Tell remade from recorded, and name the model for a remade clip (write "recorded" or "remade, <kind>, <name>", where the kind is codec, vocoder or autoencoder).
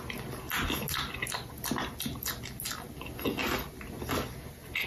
recorded